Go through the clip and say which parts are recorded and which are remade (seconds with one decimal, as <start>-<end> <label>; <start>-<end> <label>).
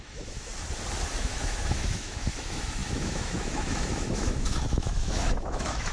0.0-0.5 remade; 0.5-1.2 recorded; 1.2-5.9 remade